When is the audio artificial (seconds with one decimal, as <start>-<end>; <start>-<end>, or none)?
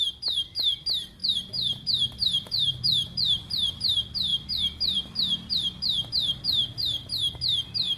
1.2-3.8